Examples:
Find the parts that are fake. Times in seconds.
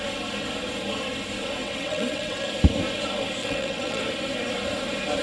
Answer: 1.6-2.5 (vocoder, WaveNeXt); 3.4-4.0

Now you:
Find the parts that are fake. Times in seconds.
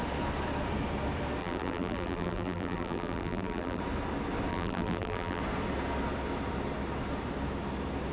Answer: 1.4-3.8 (vocoder, BigVGAN v2); 4.5-5.4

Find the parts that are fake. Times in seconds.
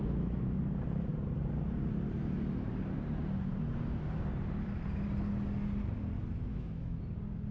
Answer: 0.0-0.6 (autoencoder, DAC-VAE); 6.5-7.0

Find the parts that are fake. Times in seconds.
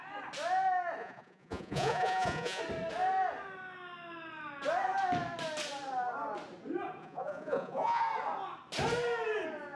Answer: 1.0-2.6 (vocoder, Vocos); 7.0-8.0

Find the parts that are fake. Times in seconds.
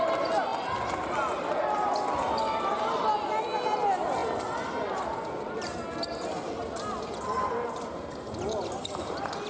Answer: none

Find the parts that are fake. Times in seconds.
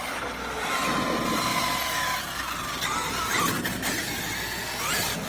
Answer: none